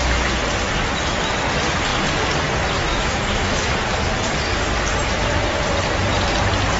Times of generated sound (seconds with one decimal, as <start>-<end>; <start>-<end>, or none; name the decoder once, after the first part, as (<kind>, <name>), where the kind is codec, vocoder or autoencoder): 2.9-3.7 (autoencoder, DAC-VAE)